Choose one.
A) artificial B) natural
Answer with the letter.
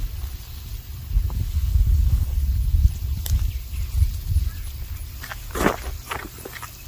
B